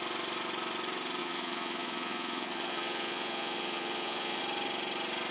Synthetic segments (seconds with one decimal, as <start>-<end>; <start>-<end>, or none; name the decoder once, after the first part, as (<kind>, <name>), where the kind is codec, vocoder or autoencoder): 1.2-4.4 (vocoder, Vocos)